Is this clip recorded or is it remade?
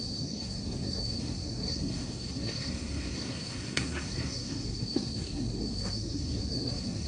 remade